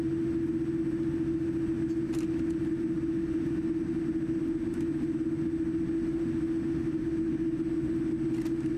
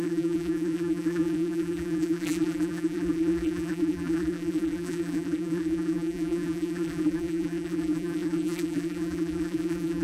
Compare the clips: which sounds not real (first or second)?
second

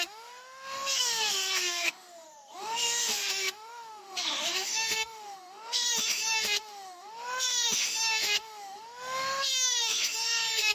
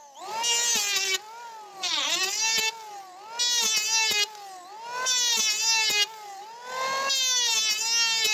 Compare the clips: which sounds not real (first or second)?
first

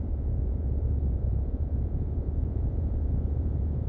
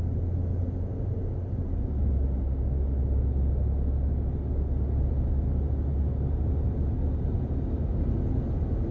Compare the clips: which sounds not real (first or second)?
first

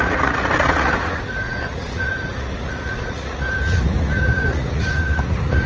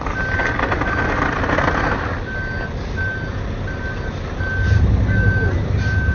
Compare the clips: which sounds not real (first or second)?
first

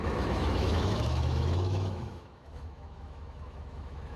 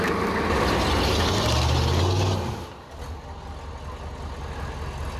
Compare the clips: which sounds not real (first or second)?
first